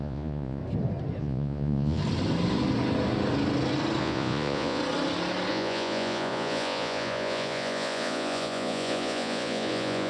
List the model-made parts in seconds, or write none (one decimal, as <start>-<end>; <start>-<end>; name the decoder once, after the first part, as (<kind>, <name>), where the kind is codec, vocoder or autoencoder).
0.0-0.6 (vocoder, Vocos); 1.2-2.0; 4.0-4.8; 5.5-10.1